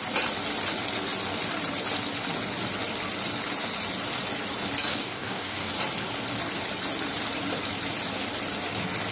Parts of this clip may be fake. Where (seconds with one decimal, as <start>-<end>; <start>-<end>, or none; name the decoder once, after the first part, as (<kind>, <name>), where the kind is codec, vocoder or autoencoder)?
4.9-5.7 (codec, DAC)